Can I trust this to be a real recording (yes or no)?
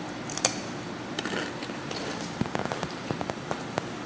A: no